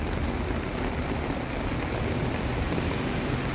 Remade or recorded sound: recorded